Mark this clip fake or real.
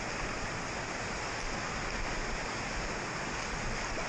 real